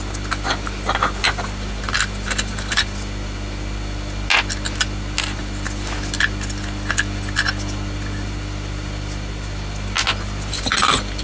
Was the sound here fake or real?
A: real